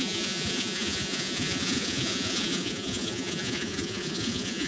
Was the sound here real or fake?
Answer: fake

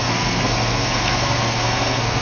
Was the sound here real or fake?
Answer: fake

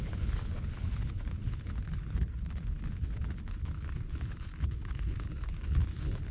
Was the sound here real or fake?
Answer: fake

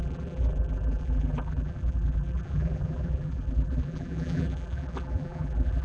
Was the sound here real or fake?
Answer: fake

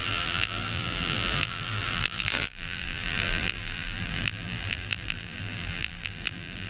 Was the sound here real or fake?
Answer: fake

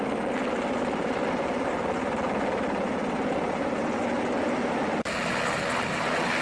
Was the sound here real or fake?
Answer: real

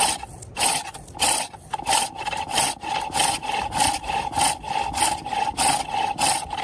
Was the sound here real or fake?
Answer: real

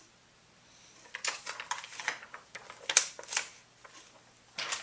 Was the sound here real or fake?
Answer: real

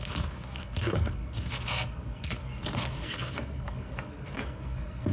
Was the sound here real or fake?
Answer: fake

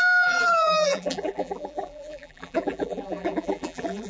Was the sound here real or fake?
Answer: fake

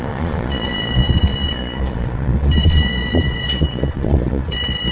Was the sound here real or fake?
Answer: fake